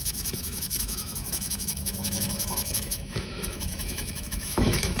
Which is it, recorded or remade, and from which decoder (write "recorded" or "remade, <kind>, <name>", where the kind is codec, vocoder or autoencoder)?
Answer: remade, autoencoder, DAC-VAE